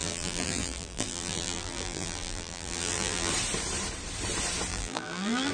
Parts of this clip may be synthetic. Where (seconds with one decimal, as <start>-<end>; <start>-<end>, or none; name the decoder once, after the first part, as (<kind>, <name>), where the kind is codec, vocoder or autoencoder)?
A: 0.0-3.3 (vocoder, BigVGAN v2); 4.7-5.5